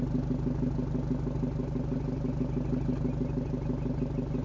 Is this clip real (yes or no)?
yes